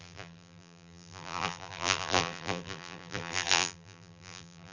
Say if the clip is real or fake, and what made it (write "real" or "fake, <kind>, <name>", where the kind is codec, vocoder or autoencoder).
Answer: fake, vocoder, BigVGAN v2